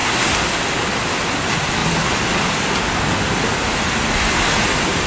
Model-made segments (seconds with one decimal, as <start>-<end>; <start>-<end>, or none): none